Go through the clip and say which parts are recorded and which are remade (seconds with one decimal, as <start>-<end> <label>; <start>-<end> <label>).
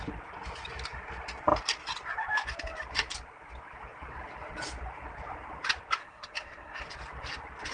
0.0-6.0 recorded; 6.0-6.9 remade; 6.9-7.7 recorded